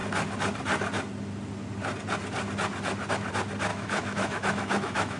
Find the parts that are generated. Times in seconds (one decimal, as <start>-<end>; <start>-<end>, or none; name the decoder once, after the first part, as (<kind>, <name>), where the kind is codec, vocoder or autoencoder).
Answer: 3.7-5.2 (autoencoder, DAC-VAE)